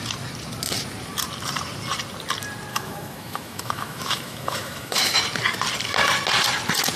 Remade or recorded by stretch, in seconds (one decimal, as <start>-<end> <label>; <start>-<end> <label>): 0.0-2.7 recorded; 2.7-5.2 remade; 5.2-7.0 recorded